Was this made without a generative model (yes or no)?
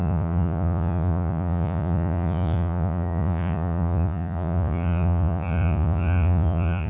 no